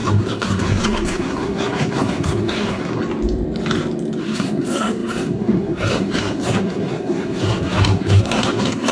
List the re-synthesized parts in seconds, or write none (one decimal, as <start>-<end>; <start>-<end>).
0.0-3.0; 4.2-8.9

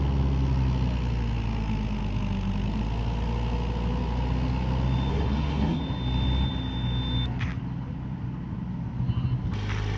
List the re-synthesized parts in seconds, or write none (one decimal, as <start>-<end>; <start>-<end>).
5.1-5.8

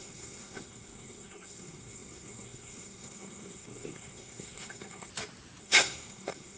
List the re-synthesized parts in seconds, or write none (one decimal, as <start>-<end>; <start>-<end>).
0.0-5.1; 5.6-6.6

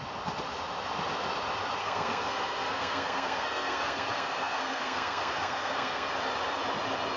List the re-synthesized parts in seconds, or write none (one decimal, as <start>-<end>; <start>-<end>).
1.8-6.1

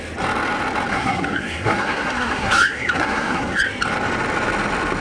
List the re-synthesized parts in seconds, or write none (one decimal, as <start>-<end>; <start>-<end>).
0.9-3.6

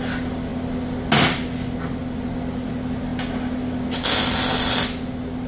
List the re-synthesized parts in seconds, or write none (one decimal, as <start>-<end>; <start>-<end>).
none

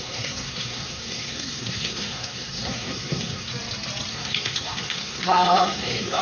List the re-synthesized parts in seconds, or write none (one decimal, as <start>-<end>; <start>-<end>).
0.0-3.5; 4.1-6.2

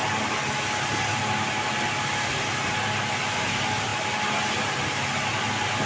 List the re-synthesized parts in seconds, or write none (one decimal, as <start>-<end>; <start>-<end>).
none